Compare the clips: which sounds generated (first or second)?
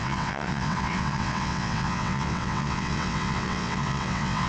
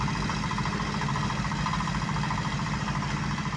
first